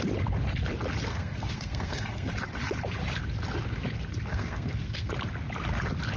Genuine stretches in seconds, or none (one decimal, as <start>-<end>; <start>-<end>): 0.0-1.1; 2.3-4.3; 5.1-6.2